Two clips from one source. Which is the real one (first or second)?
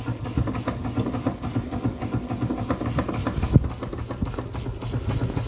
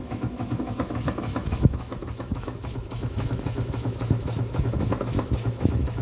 first